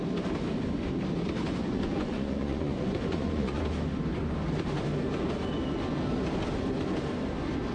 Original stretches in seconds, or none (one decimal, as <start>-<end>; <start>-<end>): 0.0-1.5; 3.6-7.7